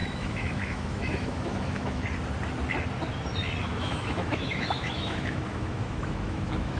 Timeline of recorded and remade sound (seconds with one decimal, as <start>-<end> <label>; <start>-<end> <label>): 0.0-2.0 remade; 2.0-3.6 recorded; 3.6-6.8 remade